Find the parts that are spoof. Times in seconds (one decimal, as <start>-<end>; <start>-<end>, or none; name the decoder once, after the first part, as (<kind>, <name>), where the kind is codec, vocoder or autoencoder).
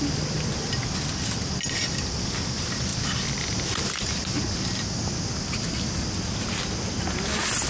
none